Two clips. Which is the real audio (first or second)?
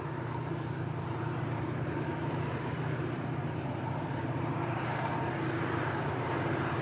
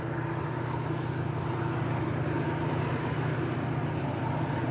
second